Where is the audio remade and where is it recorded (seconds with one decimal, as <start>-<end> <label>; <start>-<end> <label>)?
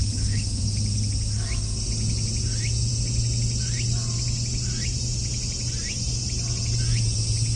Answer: 0.0-0.6 remade; 0.6-7.6 recorded